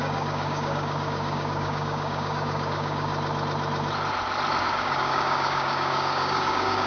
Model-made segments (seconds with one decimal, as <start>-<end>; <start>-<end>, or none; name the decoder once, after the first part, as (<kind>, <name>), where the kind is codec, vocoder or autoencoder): 0.0-3.1 (codec, DAC); 4.6-6.9